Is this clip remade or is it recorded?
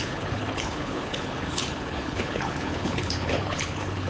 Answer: remade